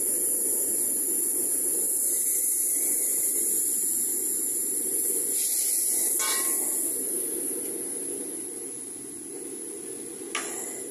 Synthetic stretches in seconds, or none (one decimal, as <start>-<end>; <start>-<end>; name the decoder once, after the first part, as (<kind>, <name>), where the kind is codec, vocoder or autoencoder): none